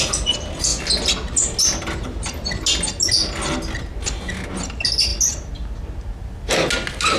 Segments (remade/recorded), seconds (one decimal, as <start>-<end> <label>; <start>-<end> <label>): 0.0-7.2 recorded